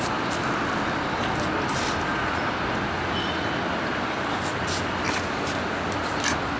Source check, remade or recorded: recorded